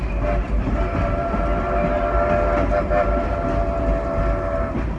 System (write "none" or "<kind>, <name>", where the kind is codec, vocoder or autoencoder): none